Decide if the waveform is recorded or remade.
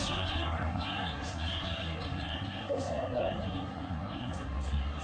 remade